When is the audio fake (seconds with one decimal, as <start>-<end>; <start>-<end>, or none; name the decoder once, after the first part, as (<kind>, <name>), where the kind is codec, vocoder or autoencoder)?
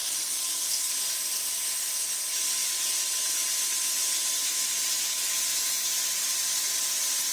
0.0-0.9 (codec, SNAC)